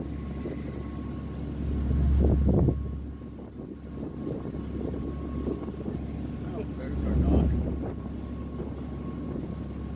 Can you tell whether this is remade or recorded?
recorded